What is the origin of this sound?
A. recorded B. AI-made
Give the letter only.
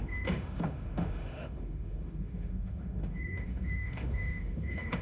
B